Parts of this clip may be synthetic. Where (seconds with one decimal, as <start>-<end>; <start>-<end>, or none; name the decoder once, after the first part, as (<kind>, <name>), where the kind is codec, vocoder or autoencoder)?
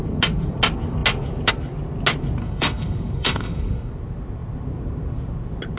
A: 2.4-3.9 (codec, SNAC)